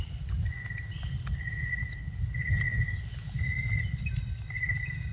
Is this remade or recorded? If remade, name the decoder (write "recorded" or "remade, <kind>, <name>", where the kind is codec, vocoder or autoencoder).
recorded